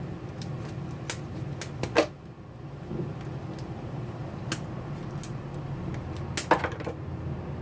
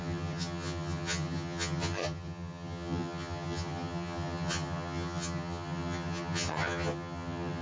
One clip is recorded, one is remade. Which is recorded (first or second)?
first